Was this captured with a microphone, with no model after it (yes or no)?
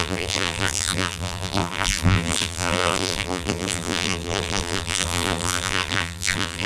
no